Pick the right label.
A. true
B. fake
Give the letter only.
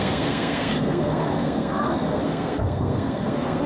B